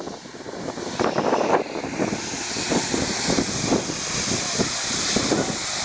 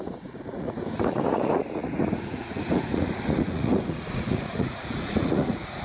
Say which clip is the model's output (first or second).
second